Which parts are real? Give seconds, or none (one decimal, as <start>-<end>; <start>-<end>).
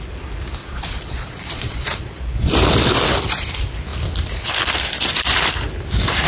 0.0-0.6; 2.5-6.3